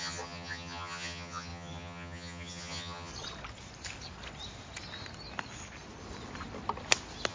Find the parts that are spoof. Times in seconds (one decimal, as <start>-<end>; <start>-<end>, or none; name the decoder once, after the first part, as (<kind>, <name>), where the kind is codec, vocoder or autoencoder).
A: 0.0-3.1 (vocoder, HiFi-GAN)